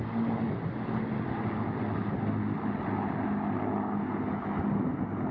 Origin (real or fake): real